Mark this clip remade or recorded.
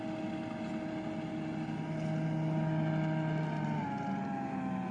recorded